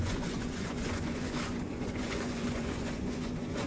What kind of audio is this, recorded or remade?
remade